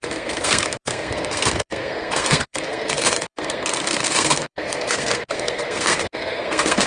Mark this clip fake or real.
fake